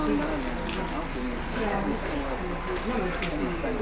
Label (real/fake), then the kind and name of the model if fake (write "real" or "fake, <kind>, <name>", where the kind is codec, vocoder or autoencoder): real